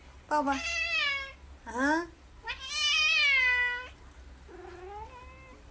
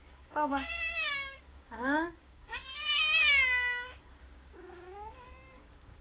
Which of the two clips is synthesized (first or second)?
second